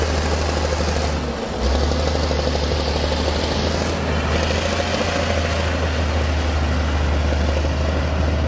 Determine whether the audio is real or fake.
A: real